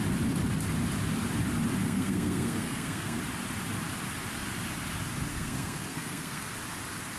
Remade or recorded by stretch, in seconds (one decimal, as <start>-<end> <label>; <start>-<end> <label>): 0.0-1.8 recorded; 1.8-3.2 remade; 3.2-5.3 recorded; 5.3-6.5 remade; 6.5-7.2 recorded